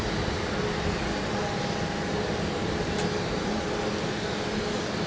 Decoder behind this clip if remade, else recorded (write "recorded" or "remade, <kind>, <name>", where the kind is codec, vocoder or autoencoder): recorded